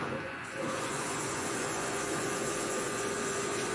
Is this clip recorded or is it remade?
remade